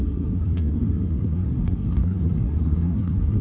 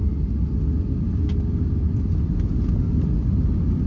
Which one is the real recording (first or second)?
second